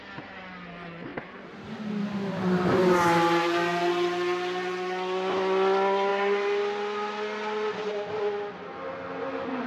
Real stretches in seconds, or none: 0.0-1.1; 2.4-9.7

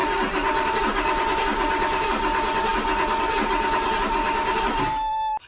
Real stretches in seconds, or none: 0.0-5.5

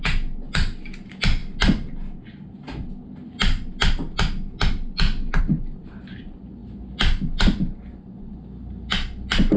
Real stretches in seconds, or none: 0.0-9.6

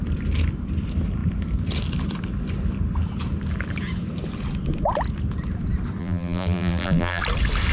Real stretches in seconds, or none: 0.0-6.0; 7.2-7.7

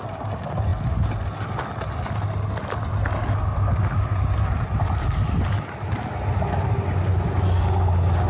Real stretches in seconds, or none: 0.0-8.3

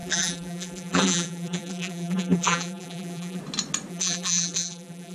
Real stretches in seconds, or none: 3.4-3.9